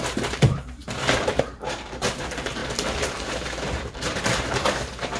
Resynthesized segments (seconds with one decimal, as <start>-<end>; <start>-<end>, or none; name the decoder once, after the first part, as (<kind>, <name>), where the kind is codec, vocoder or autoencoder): 0.0-5.2 (vocoder, BigVGAN v2)